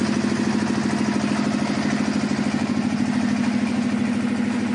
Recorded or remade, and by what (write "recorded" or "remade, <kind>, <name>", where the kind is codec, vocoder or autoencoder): recorded